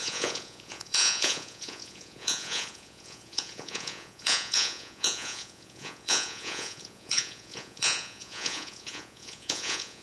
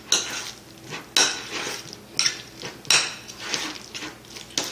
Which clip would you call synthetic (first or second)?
first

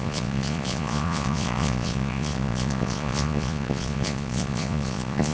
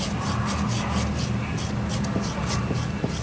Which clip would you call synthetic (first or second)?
first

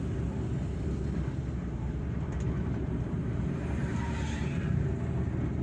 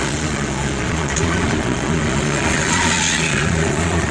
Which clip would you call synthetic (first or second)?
second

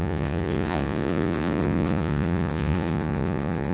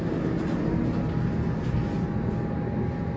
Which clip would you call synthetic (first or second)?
first